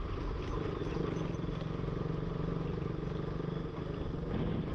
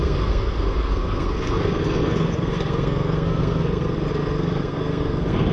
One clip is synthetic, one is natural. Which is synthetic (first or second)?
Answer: second